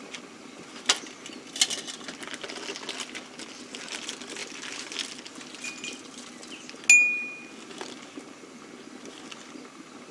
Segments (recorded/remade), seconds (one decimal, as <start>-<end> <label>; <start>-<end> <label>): 0.0-10.1 recorded